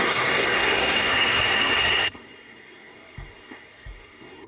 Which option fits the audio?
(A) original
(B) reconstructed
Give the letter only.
B